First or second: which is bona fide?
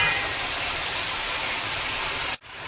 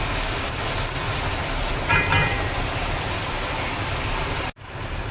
second